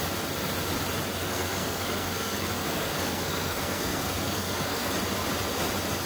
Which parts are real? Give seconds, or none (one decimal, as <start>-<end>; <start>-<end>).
0.0-1.2; 4.9-6.1